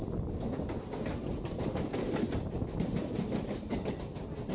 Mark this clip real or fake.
real